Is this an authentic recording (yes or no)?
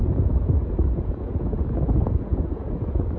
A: no